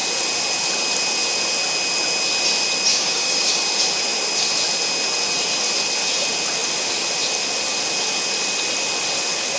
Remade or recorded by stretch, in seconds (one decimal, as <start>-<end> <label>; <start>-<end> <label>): 0.0-2.9 recorded; 2.9-3.6 remade; 3.6-9.6 recorded